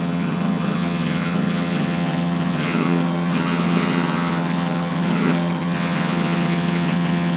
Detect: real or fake fake